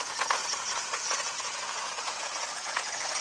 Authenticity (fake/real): fake